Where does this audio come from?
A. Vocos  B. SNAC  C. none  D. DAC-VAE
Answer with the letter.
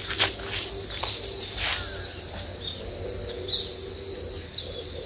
C